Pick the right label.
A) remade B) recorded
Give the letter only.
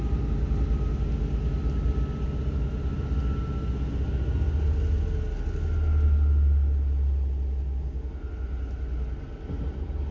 B